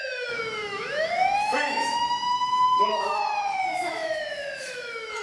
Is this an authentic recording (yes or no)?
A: no